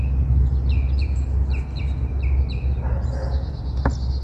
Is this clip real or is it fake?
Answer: real